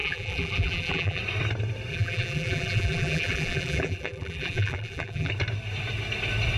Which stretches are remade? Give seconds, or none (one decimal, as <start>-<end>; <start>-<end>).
0.0-1.2; 1.9-5.3